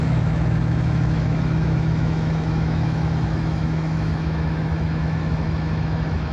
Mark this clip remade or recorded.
remade